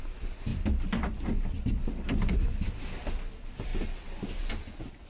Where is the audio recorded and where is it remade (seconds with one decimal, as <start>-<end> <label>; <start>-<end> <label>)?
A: 0.0-5.1 recorded